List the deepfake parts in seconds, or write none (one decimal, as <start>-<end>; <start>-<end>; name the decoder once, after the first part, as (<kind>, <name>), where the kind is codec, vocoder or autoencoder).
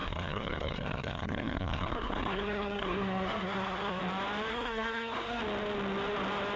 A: 0.0-4.0 (codec, SNAC); 4.5-5.4